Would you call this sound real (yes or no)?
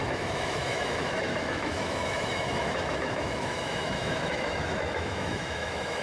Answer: no